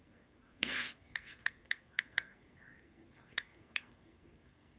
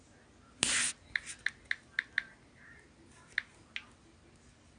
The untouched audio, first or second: second